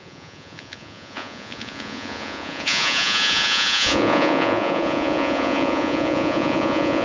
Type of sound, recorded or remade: remade